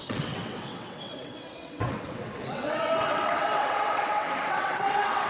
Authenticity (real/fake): fake